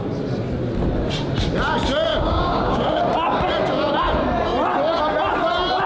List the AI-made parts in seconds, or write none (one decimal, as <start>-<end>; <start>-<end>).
2.1-3.0